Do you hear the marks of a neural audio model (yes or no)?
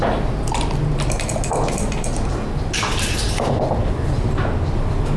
no